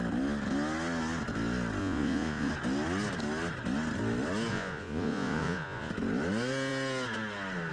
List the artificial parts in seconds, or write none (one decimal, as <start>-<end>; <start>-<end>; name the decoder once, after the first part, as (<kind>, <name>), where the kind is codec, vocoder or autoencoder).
1.8-2.5 (vocoder, Vocos); 4.5-5.9